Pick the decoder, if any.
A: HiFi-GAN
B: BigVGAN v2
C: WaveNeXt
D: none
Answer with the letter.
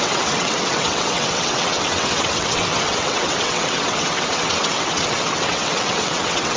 C